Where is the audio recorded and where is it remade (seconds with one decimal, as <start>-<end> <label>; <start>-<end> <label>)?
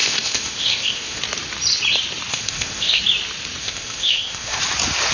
0.0-1.2 remade; 1.2-2.3 recorded; 2.3-3.0 remade; 3.0-3.6 recorded; 3.6-4.6 remade; 4.6-5.1 recorded